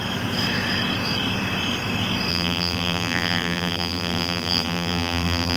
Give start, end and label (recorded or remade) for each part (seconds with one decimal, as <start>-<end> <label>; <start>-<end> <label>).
0.0-2.3 recorded; 2.3-5.6 remade